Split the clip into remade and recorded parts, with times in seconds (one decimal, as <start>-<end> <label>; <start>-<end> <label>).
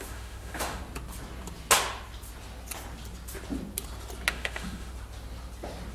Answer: 0.0-0.8 remade; 0.8-4.3 recorded; 4.3-4.9 remade; 4.9-5.9 recorded